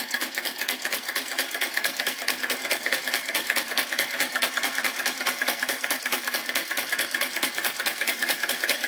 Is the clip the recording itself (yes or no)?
no